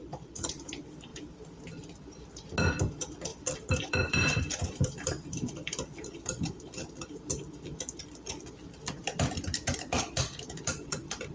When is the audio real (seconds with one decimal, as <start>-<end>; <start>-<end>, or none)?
1.1-2.8; 9.0-10.7